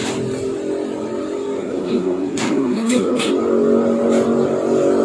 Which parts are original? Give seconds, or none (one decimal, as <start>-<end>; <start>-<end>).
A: 0.0-1.6; 3.3-5.0